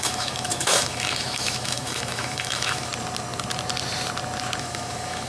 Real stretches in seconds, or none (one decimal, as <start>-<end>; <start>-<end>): 2.9-4.6